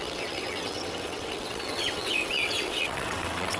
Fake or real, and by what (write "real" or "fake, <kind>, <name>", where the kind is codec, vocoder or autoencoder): fake, vocoder, WaveNeXt